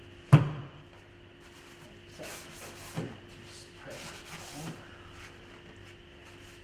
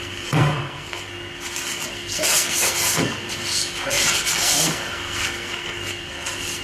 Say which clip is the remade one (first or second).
second